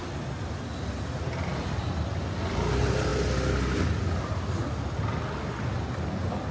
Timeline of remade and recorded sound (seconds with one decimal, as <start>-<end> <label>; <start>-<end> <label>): 0.0-6.5 recorded